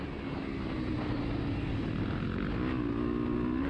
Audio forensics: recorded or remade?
recorded